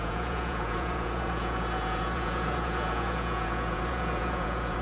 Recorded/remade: remade